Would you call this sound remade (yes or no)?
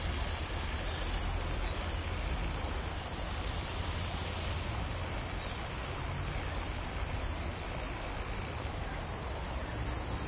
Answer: no